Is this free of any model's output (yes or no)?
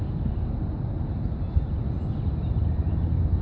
yes